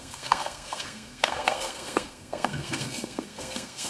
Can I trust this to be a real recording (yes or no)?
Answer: no